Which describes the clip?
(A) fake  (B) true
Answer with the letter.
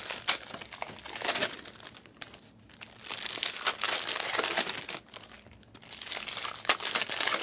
B